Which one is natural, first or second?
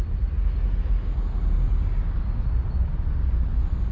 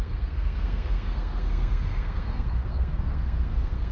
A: first